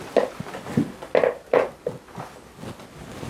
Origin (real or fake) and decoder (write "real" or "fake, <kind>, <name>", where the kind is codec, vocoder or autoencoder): real